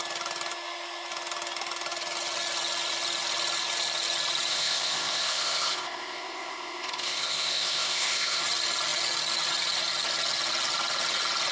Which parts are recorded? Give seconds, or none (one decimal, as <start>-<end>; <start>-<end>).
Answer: 0.0-4.5; 8.4-11.5